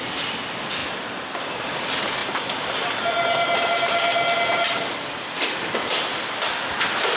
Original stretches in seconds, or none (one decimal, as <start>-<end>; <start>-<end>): 0.0-7.2